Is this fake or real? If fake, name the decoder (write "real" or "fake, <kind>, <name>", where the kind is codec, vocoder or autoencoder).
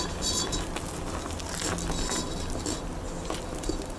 real